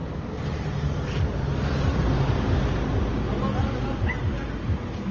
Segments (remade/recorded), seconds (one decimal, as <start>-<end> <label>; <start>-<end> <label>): 0.0-5.1 recorded